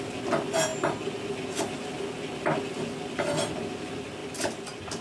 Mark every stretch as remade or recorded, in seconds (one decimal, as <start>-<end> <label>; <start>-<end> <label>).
0.0-5.0 recorded